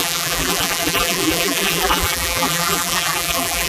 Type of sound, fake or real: fake